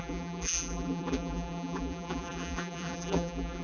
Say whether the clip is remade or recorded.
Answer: remade